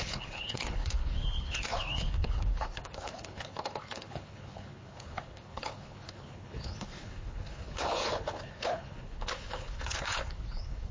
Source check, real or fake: fake